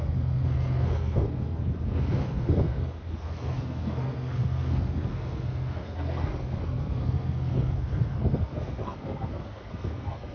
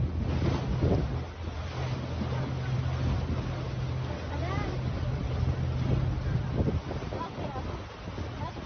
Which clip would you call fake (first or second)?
first